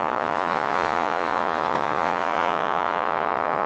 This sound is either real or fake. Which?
fake